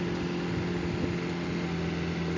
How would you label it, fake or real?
real